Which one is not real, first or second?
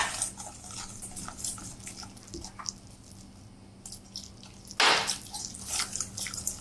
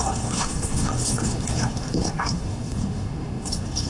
second